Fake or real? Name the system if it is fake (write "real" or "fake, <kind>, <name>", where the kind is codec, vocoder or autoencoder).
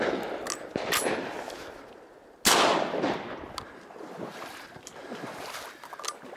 real